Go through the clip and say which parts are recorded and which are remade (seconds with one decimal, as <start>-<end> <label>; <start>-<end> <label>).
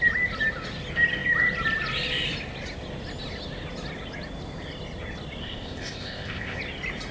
0.0-5.4 recorded; 5.4-6.6 remade; 6.6-7.1 recorded